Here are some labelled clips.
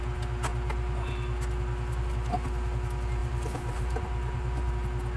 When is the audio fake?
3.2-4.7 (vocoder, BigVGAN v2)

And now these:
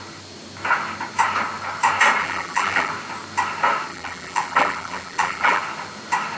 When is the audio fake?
2.2-2.9 (vocoder, BigVGAN v2); 3.9-5.6

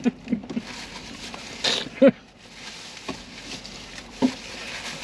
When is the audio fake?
4.0-4.6 (vocoder, BigVGAN v2)